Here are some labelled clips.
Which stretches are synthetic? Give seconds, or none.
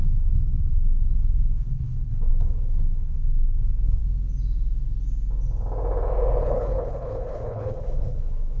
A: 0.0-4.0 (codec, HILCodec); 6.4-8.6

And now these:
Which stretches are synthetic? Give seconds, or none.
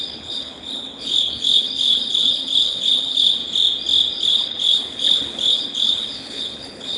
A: 0.0-3.4 (codec, HILCodec); 4.2-7.0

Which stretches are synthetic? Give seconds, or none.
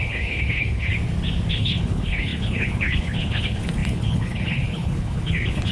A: 0.0-0.9 (codec, HILCodec); 1.5-5.7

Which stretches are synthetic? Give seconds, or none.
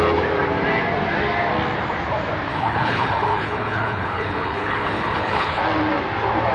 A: 2.5-5.6 (codec, HILCodec)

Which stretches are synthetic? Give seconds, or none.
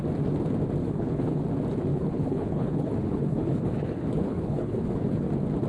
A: 0.8-1.4 (codec, HILCodec); 1.9-5.3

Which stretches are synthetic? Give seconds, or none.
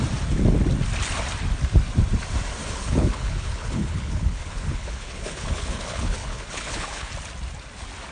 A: 2.6-7.1 (codec, HILCodec)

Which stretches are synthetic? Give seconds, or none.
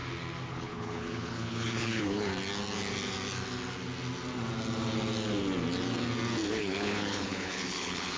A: 0.5-2.3 (codec, HILCodec); 6.5-8.2